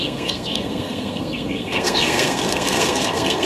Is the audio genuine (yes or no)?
no